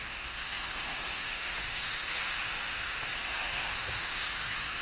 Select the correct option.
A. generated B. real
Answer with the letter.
A